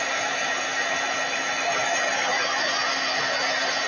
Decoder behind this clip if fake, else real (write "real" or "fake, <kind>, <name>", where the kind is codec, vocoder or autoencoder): real